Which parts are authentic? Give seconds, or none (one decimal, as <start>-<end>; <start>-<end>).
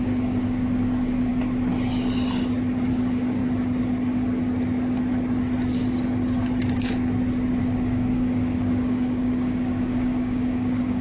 1.3-2.9; 3.4-7.6